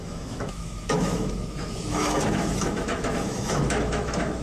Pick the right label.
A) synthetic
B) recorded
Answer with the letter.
A